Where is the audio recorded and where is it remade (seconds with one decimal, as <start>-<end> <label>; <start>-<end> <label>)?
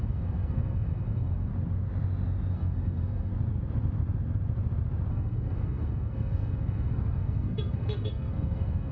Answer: 0.0-1.5 remade; 1.5-2.5 recorded; 2.5-3.3 remade; 3.3-5.1 recorded; 5.1-8.9 remade